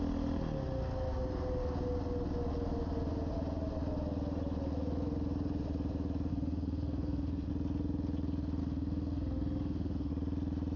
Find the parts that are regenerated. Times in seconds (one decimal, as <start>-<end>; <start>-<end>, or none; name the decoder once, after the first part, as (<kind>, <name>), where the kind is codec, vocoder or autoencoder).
6.3-7.5 (codec, SNAC); 8.6-10.1